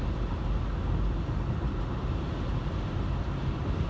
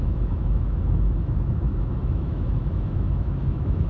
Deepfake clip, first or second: second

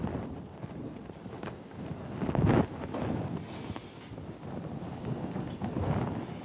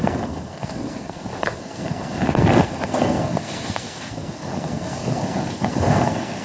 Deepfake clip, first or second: second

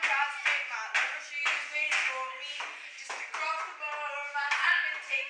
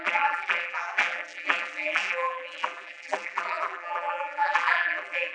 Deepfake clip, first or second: second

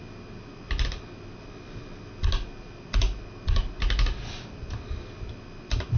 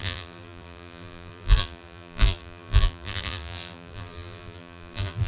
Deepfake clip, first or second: second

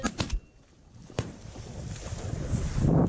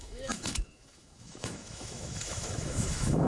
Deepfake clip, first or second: second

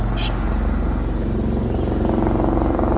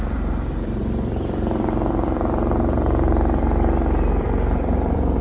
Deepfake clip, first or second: second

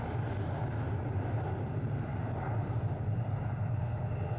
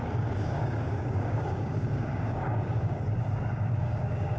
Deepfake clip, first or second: second